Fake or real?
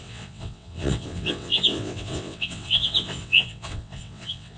fake